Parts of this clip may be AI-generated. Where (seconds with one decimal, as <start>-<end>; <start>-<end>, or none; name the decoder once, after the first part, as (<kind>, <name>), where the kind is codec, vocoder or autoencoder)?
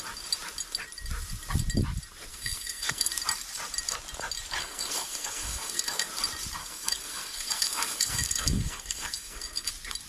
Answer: 2.3-3.1 (codec, SNAC); 4.6-6.1; 6.6-9.7